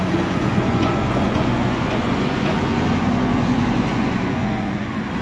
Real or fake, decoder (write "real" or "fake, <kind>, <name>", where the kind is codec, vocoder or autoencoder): fake, vocoder, Vocos